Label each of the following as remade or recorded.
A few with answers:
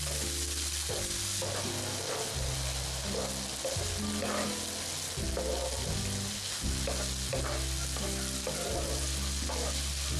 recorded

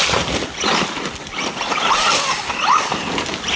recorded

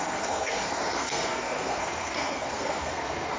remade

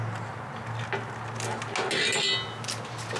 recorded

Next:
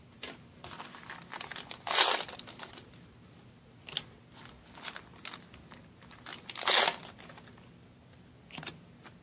recorded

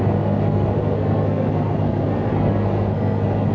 remade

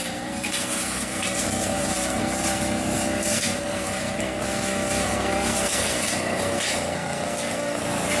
remade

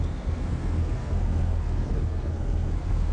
remade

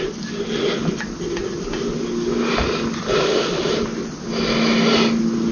recorded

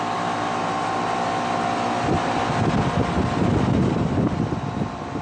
recorded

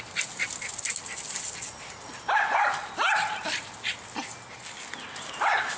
recorded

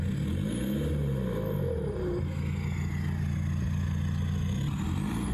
recorded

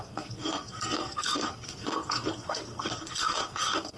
remade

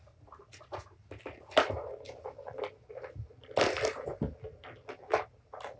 recorded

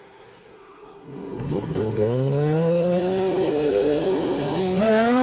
remade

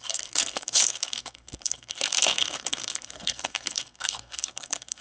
remade